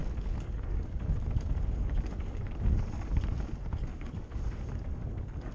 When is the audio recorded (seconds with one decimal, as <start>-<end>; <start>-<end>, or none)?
3.2-3.9